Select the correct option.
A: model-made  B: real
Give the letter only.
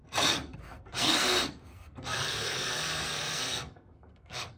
A